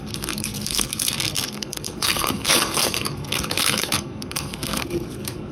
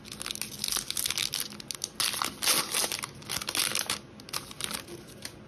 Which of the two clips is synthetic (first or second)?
first